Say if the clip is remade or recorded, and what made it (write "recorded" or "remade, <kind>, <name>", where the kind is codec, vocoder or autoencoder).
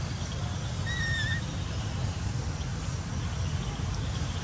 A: recorded